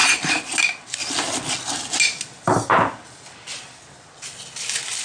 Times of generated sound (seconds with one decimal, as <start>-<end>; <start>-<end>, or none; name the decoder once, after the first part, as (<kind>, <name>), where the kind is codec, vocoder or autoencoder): none